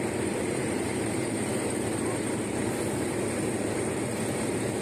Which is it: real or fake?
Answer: fake